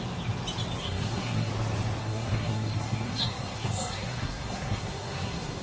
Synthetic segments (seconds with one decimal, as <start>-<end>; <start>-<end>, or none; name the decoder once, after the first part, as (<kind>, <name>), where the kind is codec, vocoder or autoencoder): 0.8-1.5 (codec, SNAC); 2.0-5.6